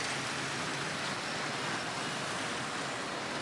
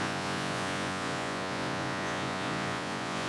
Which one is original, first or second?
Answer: first